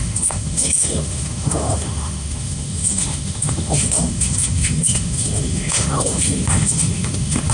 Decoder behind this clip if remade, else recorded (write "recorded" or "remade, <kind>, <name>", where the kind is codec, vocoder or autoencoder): remade, autoencoder, DAC-VAE